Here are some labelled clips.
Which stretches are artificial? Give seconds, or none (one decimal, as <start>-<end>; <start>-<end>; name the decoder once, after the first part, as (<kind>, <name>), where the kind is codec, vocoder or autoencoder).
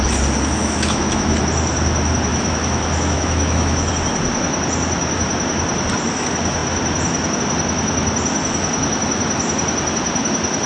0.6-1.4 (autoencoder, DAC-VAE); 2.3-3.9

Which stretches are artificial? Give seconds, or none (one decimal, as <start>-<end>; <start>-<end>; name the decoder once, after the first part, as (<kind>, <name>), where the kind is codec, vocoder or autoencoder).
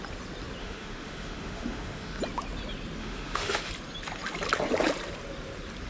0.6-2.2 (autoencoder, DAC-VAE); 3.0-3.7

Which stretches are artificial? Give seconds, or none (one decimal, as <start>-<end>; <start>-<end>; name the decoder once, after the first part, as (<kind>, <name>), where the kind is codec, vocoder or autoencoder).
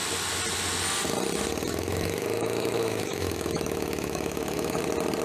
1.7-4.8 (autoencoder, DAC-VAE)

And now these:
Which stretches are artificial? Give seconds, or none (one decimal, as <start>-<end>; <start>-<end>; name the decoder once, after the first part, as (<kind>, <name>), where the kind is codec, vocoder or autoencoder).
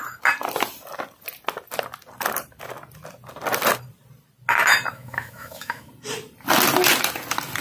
4.9-5.9 (autoencoder, DAC-VAE)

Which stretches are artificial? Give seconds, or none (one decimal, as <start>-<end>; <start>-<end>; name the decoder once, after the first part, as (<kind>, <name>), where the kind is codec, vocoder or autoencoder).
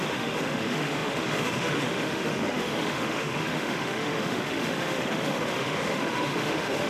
0.0-6.9 (autoencoder, DAC-VAE)